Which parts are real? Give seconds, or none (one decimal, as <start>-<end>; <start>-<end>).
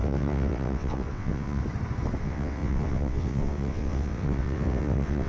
1.6-2.2